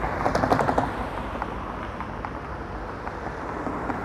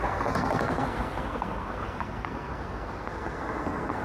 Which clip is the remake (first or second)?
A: second